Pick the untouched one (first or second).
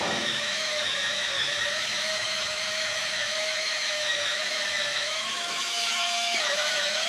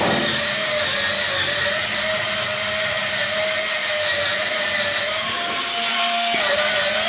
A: second